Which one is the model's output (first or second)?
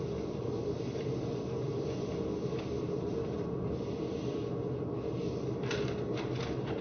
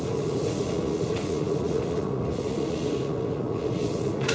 second